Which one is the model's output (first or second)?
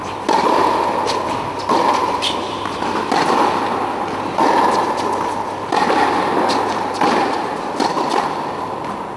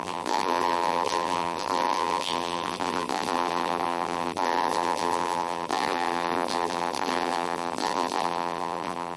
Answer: second